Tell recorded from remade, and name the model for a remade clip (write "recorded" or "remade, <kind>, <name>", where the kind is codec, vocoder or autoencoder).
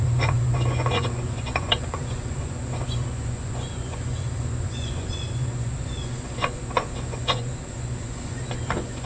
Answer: remade, vocoder, Vocos